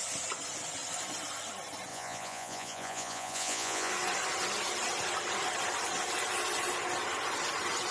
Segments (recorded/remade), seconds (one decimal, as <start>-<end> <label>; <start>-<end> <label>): 0.0-1.9 recorded; 1.9-3.9 remade; 3.9-7.9 recorded